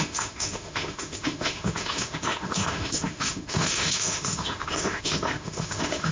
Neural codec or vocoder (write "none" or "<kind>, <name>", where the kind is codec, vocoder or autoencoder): autoencoder, DAC-VAE